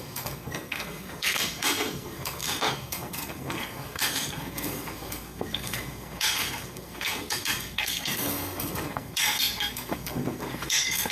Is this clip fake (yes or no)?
yes